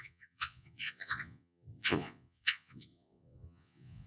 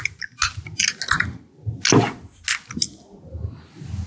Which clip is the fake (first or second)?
first